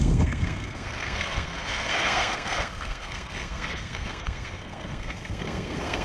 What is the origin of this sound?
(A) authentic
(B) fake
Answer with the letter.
B